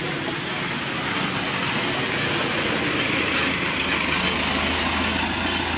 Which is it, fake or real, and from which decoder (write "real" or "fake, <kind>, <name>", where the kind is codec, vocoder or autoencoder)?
real